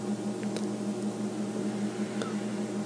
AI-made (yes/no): no